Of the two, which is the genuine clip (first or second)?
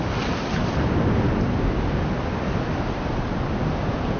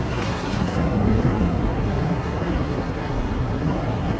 first